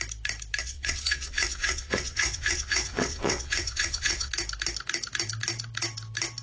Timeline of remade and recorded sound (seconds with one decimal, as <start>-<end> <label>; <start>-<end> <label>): 0.0-0.6 recorded; 0.6-4.3 remade; 4.3-6.4 recorded